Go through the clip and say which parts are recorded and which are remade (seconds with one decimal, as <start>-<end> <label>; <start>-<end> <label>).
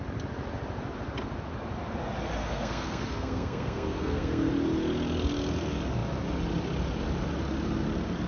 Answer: 0.0-2.4 recorded; 2.4-4.5 remade; 4.5-8.3 recorded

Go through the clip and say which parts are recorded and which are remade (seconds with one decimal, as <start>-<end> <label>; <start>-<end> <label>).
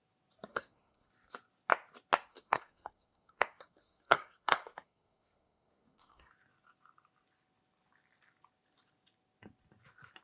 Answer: 0.0-0.5 recorded; 0.5-1.1 remade; 1.1-2.3 recorded; 2.3-6.3 remade; 6.3-10.2 recorded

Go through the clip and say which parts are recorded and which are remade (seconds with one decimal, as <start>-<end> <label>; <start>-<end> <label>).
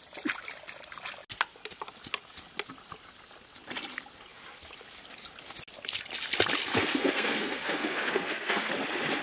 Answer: 0.0-6.7 recorded; 6.7-8.7 remade; 8.7-9.2 recorded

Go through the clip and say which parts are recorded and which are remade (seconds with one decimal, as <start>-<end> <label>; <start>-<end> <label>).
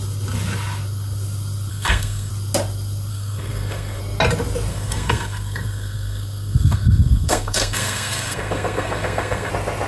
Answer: 0.0-1.7 recorded; 1.7-2.3 remade; 2.3-3.1 recorded; 3.1-4.0 remade; 4.0-4.7 recorded; 4.7-9.5 remade; 9.5-9.9 recorded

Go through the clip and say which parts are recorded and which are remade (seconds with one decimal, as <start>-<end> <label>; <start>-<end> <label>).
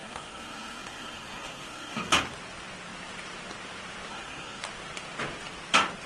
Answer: 0.0-2.1 remade; 2.1-4.1 recorded; 4.1-4.6 remade; 4.6-6.1 recorded